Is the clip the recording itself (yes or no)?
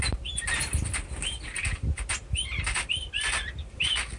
no